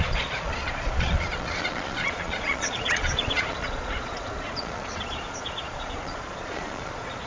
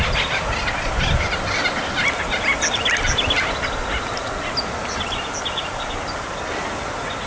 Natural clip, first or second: second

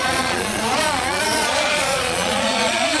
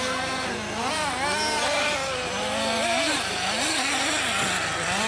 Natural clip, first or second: second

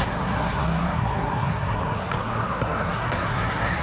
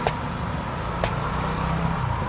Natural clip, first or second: second